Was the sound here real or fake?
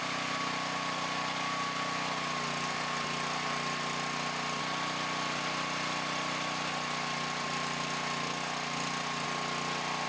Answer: real